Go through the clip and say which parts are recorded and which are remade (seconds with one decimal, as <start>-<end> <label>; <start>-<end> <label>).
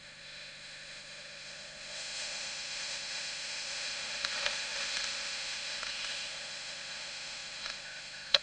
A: 0.0-8.4 remade